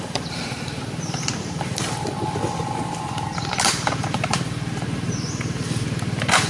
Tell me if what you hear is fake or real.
fake